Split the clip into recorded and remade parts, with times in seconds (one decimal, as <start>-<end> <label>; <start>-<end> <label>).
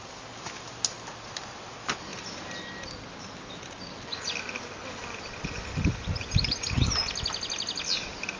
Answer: 0.0-8.4 recorded